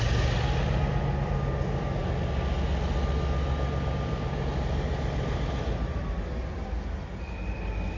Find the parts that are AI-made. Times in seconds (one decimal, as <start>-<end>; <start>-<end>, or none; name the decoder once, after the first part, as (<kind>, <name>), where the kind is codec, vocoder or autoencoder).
none